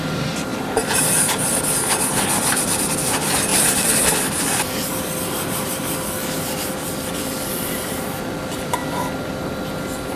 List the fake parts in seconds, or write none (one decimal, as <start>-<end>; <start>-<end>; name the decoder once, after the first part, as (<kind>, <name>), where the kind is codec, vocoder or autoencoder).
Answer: 0.0-0.5 (vocoder, BigVGAN v2); 2.1-8.8

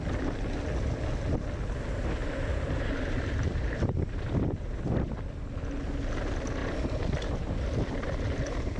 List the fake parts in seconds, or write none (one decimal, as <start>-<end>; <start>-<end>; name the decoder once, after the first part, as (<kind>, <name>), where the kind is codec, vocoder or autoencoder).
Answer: 2.2-4.8 (vocoder, BigVGAN v2)

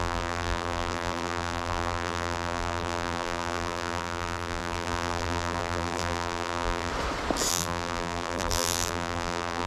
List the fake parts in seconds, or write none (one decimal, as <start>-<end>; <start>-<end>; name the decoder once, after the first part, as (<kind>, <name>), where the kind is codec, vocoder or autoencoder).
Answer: 0.0-6.9 (vocoder, BigVGAN v2); 7.5-9.7

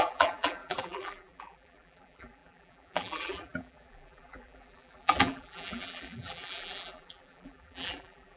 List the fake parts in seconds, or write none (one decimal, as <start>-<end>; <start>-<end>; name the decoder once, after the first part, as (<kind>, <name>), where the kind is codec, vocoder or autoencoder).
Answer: 0.0-8.4 (vocoder, BigVGAN v2)

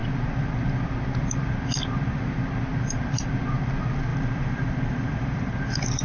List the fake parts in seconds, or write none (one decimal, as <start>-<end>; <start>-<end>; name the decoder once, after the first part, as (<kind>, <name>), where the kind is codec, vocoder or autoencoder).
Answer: 4.1-5.5 (vocoder, BigVGAN v2)

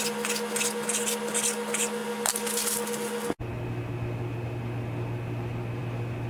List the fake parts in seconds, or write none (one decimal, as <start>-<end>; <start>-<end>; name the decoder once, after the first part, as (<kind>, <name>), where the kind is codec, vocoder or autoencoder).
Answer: none

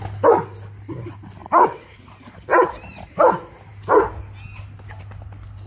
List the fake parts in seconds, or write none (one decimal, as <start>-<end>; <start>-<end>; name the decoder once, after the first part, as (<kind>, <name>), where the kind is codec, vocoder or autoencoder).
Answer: 1.4-3.3 (vocoder, BigVGAN v2)

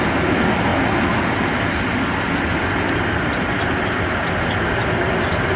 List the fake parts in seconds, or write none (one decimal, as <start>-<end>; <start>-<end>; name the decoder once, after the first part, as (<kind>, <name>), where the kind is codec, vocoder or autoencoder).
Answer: none